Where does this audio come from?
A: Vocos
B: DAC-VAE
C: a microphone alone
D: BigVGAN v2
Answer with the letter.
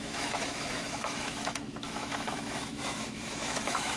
B